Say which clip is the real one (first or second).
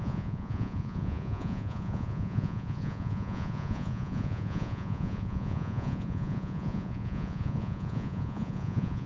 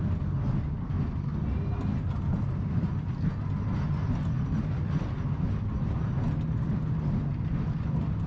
second